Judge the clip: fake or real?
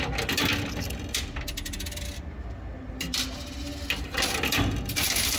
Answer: real